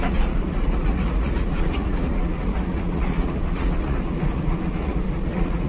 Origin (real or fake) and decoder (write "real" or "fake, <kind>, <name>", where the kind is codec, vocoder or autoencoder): fake, vocoder, Vocos